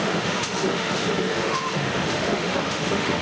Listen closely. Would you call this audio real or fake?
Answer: fake